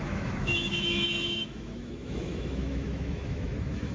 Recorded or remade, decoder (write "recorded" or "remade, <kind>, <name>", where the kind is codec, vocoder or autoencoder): remade, autoencoder, DAC-VAE